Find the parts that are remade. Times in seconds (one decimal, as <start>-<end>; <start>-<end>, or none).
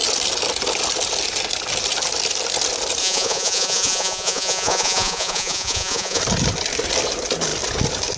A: 3.0-6.2